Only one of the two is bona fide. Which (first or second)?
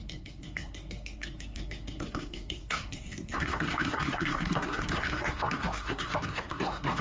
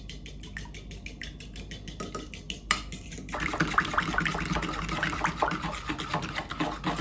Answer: second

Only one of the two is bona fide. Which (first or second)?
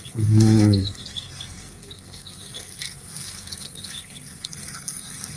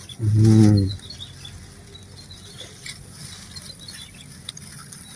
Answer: second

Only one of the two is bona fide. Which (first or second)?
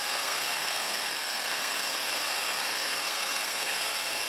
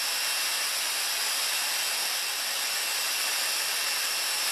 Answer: second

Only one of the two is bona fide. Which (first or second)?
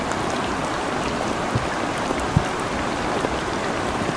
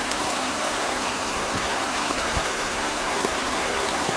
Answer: first